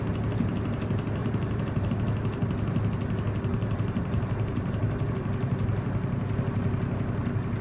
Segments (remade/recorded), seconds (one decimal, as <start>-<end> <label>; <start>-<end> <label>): 0.0-1.2 recorded; 1.2-1.9 remade; 1.9-3.5 recorded; 3.5-5.1 remade; 5.1-7.6 recorded